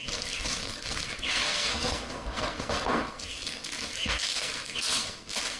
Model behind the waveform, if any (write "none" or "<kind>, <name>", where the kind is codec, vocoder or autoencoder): codec, SNAC